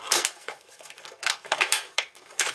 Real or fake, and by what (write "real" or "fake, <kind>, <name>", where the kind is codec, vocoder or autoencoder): fake, codec, SNAC